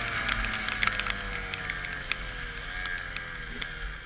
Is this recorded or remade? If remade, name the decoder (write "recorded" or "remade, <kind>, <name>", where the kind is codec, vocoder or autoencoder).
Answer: recorded